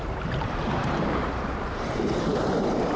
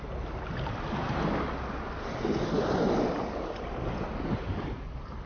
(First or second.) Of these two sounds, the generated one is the first